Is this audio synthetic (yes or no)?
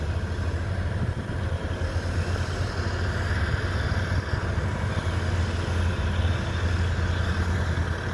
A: no